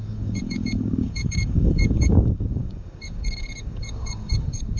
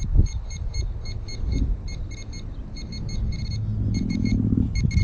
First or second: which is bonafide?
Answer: second